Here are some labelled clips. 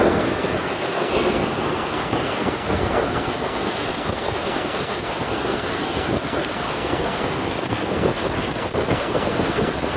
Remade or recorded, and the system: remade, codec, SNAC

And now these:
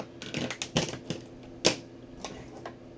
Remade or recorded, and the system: recorded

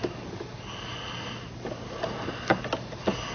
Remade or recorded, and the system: recorded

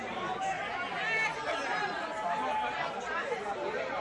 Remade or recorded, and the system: recorded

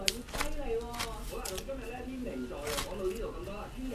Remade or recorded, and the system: recorded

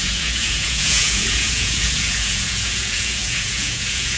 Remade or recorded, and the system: remade, vocoder, Vocos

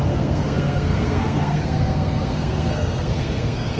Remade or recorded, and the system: remade, codec, SNAC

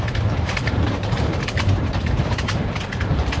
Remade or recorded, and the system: remade, vocoder, BigVGAN v2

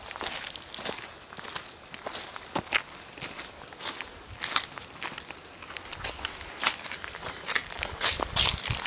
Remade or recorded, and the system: recorded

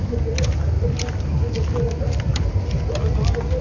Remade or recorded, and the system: recorded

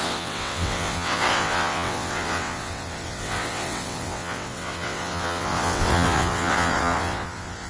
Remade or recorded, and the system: remade, vocoder, WaveNeXt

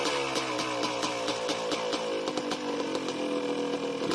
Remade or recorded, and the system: recorded